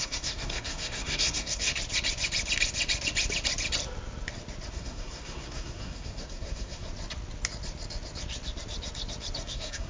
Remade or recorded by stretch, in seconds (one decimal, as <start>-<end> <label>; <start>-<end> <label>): 0.0-1.7 remade; 1.7-4.7 recorded; 4.7-6.9 remade; 6.9-9.4 recorded; 9.4-9.9 remade